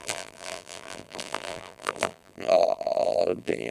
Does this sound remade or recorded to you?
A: remade